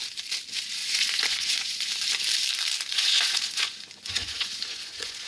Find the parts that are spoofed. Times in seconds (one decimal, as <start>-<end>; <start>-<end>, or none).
0.8-1.9; 2.9-5.3